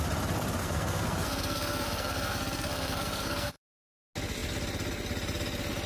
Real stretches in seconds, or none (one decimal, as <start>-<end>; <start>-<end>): 0.0-0.6; 3.7-5.9